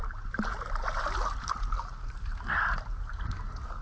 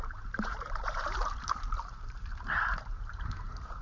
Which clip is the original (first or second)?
first